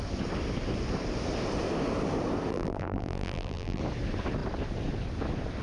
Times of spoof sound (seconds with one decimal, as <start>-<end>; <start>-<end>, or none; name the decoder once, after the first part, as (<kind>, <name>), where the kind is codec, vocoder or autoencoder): 2.5-3.8 (vocoder, BigVGAN v2)